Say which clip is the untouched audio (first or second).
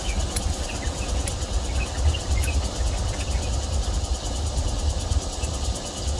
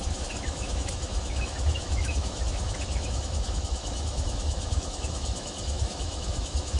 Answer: first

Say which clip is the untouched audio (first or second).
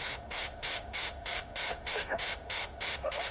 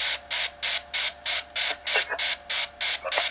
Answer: second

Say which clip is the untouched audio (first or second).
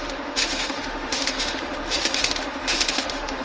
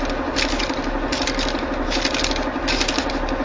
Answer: second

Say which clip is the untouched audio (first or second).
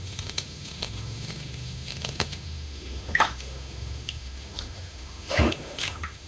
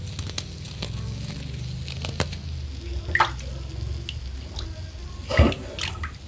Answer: second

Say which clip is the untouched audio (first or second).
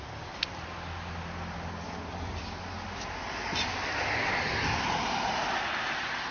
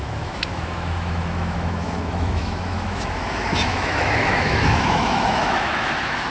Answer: first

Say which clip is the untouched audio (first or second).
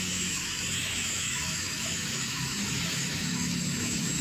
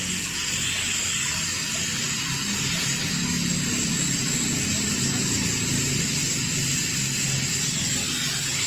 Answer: second